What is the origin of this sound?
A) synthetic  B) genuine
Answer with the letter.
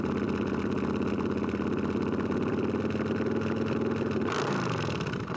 B